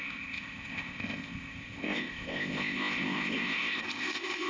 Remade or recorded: remade